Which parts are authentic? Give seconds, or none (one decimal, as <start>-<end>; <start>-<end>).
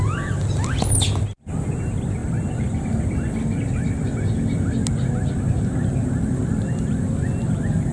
0.0-7.9